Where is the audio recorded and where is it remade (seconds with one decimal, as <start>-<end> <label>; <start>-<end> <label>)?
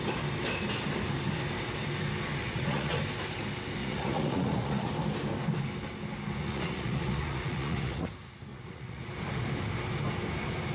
0.0-2.4 recorded; 2.4-3.0 remade; 3.0-3.8 recorded; 3.8-4.9 remade; 4.9-6.4 recorded; 6.4-8.1 remade; 8.1-8.5 recorded; 8.5-9.1 remade; 9.1-10.7 recorded